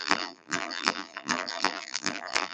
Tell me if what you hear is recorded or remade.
remade